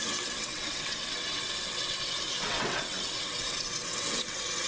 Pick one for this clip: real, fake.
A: fake